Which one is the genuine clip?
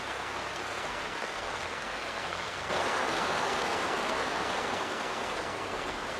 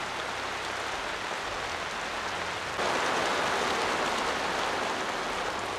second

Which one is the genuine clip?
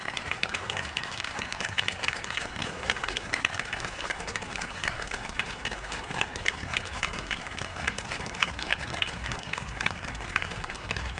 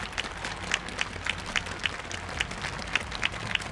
second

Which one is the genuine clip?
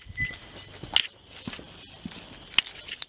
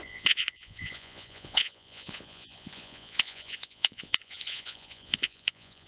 first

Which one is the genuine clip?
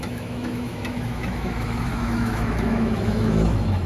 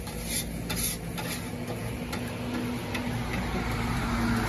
second